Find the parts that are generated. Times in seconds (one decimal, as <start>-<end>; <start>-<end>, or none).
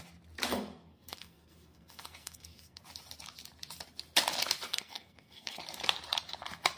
0.5-2.8; 4.7-5.6